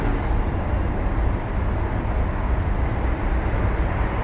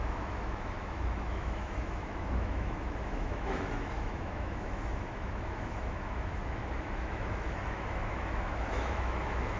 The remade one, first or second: second